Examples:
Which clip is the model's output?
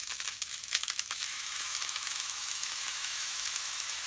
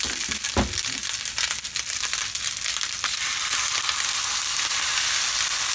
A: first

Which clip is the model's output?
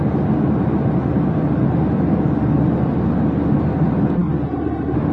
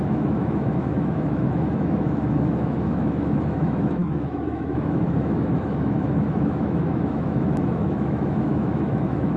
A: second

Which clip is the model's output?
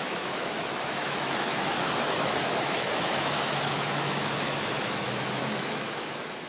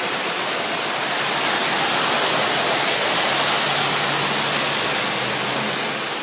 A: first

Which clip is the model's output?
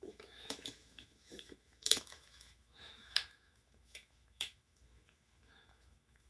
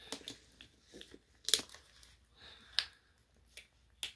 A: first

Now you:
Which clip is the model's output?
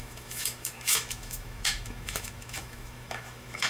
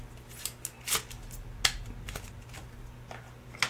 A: first